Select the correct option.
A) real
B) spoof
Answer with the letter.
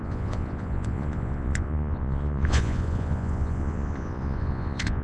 B